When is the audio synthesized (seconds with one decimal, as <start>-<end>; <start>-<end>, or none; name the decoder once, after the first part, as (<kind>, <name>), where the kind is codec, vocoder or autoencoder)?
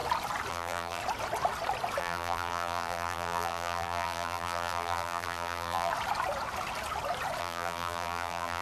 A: 0.5-1.0 (vocoder, BigVGAN v2); 2.0-5.9; 7.4-8.6